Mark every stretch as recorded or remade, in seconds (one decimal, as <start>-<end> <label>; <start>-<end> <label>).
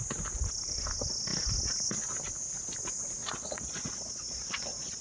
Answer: 0.0-3.2 recorded; 3.2-5.0 remade